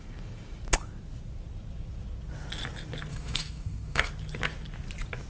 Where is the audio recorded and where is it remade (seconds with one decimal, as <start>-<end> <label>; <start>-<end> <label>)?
0.0-3.1 recorded; 3.1-4.1 remade; 4.1-5.3 recorded